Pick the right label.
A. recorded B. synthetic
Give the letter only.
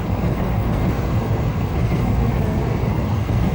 B